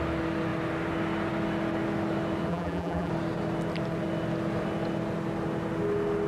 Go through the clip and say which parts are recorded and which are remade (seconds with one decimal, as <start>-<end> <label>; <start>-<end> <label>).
0.0-2.5 recorded; 2.5-3.1 remade; 3.1-6.3 recorded

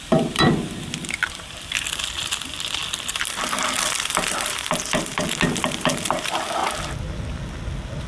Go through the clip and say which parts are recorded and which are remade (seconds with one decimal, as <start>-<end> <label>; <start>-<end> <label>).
0.0-6.6 remade; 6.6-8.1 recorded